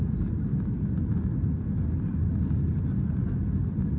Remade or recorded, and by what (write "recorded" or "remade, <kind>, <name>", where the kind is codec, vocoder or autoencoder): recorded